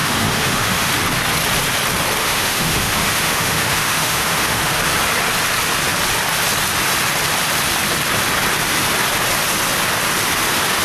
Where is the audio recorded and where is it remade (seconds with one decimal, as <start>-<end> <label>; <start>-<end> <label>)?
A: 0.0-0.9 remade; 0.9-2.2 recorded; 2.2-4.8 remade; 4.8-10.8 recorded